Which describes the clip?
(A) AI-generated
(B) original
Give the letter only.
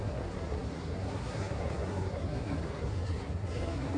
A